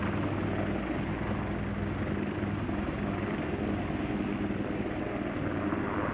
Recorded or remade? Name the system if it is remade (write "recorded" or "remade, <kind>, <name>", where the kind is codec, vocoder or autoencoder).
recorded